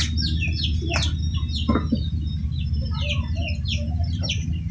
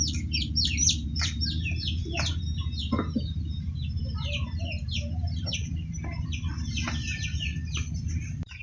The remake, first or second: second